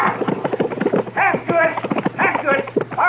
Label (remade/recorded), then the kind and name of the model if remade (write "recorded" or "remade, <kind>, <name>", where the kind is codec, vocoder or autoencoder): recorded